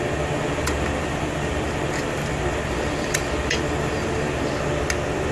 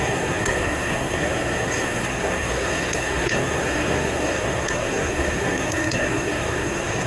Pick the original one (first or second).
first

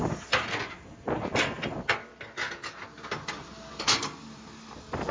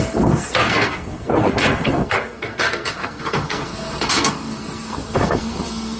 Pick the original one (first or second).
first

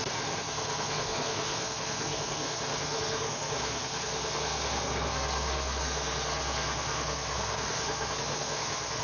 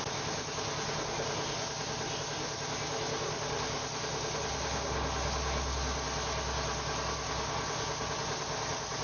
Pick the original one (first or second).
second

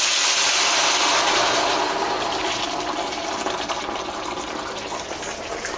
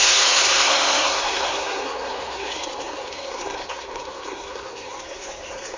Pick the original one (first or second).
first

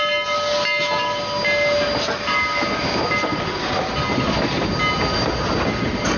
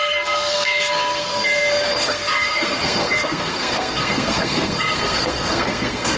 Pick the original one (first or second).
first